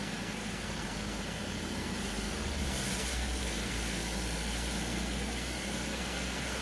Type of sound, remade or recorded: remade